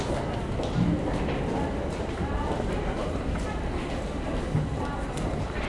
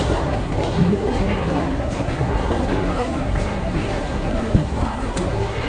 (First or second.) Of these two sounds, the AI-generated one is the second